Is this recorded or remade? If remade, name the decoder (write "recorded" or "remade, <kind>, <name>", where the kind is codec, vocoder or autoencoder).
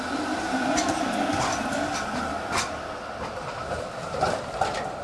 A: recorded